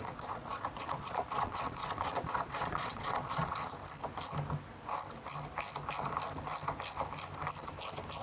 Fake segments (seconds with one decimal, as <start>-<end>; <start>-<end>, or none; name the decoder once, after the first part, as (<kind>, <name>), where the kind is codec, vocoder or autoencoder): 0.0-3.7 (vocoder, Vocos)